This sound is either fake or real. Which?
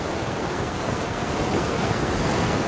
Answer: fake